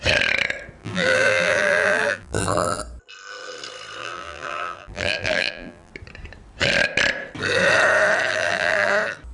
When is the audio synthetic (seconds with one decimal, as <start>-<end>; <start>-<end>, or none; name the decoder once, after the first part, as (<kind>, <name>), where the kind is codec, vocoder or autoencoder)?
0.8-2.8 (vocoder, BigVGAN v2); 4.0-5.9; 8.3-8.9